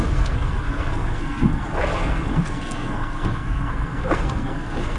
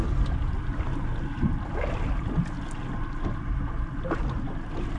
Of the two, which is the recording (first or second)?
second